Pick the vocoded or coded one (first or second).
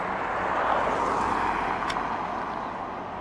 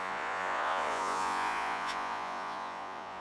second